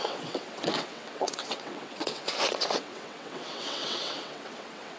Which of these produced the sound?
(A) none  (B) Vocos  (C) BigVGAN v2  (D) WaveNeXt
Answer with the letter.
D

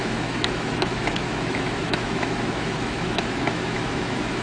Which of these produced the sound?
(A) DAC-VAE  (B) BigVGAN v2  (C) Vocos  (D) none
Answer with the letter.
A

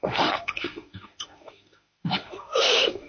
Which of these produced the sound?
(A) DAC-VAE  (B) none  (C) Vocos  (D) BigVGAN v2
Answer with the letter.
A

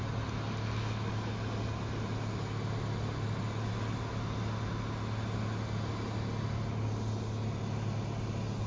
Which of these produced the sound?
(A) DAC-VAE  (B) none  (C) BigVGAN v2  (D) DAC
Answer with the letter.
B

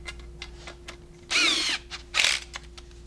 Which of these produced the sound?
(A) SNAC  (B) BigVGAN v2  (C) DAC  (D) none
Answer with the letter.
D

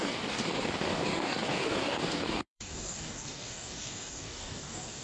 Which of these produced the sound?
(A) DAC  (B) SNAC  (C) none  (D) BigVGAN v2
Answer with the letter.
A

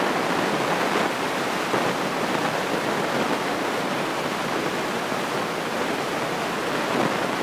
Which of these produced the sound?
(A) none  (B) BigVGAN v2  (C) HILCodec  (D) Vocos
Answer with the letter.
A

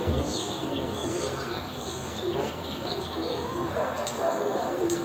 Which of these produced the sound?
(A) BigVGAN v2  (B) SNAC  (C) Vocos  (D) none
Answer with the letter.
B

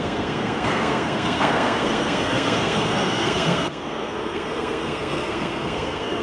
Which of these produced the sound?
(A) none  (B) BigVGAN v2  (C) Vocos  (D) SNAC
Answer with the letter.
D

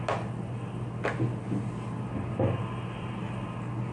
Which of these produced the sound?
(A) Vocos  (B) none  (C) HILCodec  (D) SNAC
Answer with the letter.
B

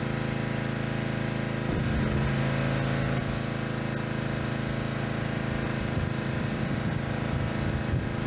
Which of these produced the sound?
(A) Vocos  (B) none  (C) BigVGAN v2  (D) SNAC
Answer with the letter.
B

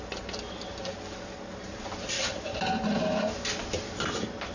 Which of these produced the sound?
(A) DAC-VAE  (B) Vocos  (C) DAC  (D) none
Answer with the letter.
D